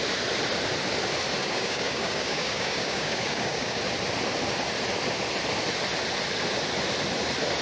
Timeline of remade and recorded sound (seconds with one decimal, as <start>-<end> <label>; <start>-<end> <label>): 0.0-1.4 recorded; 1.4-3.8 remade; 3.8-7.6 recorded